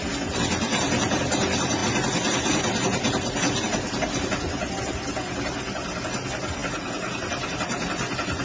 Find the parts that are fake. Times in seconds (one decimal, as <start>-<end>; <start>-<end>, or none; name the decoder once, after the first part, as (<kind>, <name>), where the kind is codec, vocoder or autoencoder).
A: none

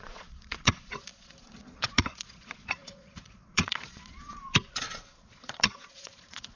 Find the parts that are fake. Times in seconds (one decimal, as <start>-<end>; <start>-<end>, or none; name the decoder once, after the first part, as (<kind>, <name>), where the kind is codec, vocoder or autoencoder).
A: 0.0-6.6 (vocoder, Vocos)

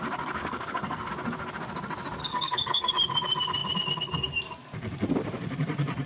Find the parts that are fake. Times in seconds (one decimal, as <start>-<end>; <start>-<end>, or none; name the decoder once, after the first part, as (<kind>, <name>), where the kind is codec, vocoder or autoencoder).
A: 0.4-1.1 (codec, SNAC); 2.2-2.9

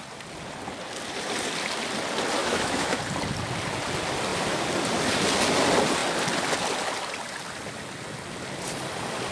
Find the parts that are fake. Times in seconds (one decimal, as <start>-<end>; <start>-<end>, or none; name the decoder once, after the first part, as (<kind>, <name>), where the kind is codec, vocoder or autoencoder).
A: 2.4-3.0 (autoencoder, DAC-VAE)

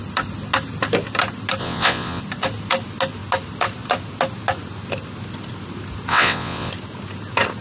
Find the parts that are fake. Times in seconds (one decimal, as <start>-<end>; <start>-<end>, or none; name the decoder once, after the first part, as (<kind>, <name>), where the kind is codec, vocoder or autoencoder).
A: 1.6-2.2 (vocoder, WaveNeXt); 6.1-6.7

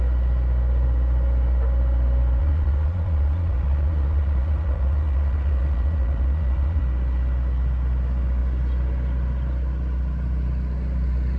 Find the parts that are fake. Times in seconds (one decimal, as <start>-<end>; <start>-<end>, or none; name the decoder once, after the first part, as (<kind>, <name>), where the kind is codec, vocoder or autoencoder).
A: 2.4-6.8 (vocoder, Vocos)

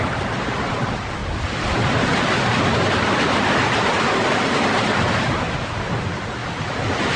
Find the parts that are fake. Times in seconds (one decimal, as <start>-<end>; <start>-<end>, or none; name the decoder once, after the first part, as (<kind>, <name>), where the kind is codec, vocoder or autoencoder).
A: 1.2-5.3 (vocoder, BigVGAN v2); 6.4-7.2